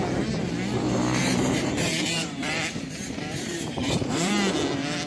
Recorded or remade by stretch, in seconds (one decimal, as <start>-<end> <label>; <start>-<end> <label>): 0.0-1.2 recorded; 1.2-4.3 remade; 4.3-5.1 recorded